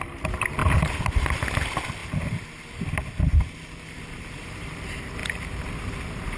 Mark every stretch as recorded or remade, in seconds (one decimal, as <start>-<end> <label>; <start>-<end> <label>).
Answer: 0.0-0.6 remade; 0.6-1.2 recorded; 1.2-2.0 remade; 2.0-3.9 recorded; 3.9-6.4 remade